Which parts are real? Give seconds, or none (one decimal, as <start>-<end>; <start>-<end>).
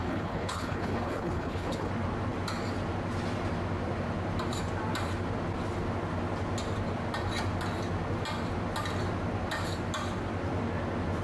1.9-11.2